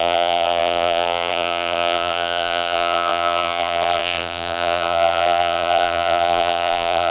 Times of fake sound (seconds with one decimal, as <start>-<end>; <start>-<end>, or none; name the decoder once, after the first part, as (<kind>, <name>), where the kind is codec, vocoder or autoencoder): 0.0-7.1 (vocoder, BigVGAN v2)